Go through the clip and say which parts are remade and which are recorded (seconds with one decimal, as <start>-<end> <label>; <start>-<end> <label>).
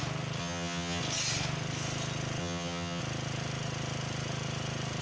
0.0-0.4 recorded; 0.4-1.0 remade; 1.0-2.4 recorded; 2.4-3.0 remade; 3.0-5.0 recorded